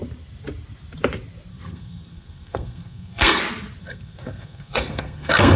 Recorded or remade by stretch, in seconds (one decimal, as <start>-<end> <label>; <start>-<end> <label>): 0.0-1.5 recorded; 1.5-3.4 remade; 3.4-3.8 recorded; 3.8-5.6 remade

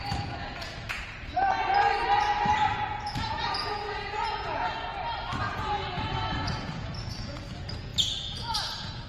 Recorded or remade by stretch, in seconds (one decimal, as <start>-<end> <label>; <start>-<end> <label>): 0.0-1.4 remade; 1.4-2.9 recorded; 2.9-4.9 remade; 4.9-5.4 recorded; 5.4-9.1 remade

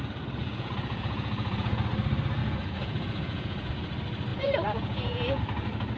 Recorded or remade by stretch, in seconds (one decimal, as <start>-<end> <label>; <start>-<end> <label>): 0.0-0.4 recorded; 0.4-1.8 remade; 1.8-2.4 recorded; 2.4-3.7 remade; 3.7-4.3 recorded; 4.3-5.4 remade; 5.4-6.0 recorded

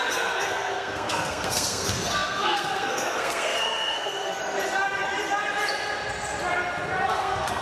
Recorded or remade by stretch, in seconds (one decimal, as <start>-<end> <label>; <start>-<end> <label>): 0.0-4.4 remade; 4.4-7.1 recorded; 7.1-7.6 remade